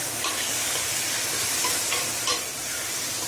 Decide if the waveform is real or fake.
fake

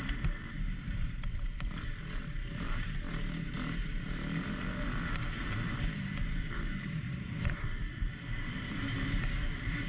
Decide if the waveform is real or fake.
fake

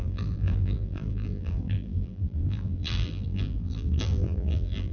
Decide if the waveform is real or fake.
fake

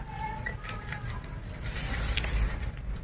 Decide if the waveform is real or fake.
fake